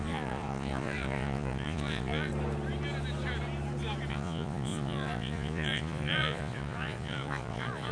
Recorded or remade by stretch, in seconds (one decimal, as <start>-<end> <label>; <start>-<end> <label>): 0.0-2.3 remade; 2.3-4.1 recorded; 4.1-7.9 remade